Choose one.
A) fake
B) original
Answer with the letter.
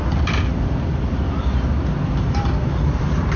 A